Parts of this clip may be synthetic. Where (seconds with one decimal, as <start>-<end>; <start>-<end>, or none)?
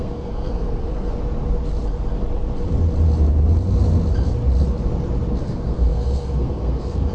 0.0-1.1; 5.4-7.1